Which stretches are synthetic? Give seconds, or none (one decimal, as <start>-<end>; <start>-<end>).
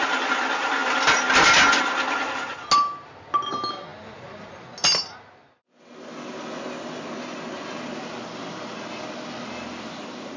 none